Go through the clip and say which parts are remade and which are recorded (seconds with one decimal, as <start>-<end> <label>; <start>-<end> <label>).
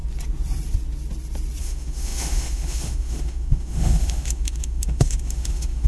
0.0-1.6 recorded; 1.6-5.9 remade